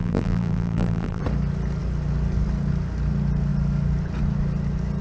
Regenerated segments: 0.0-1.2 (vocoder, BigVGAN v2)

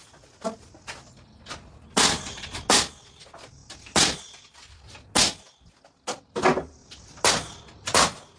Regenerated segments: none

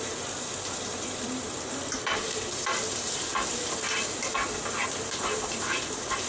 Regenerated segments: 0.0-3.3 (vocoder, BigVGAN v2); 5.2-6.3

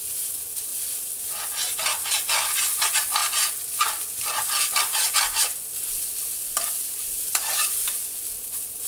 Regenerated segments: 0.7-1.2 (vocoder, BigVGAN v2); 3.2-8.3

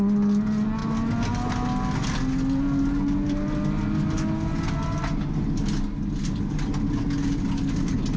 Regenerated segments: none

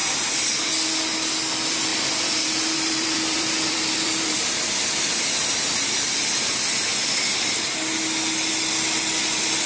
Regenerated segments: 1.9-6.4 (vocoder, BigVGAN v2)

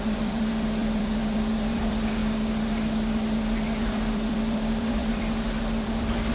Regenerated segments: 0.0-2.2 (vocoder, BigVGAN v2); 3.8-6.3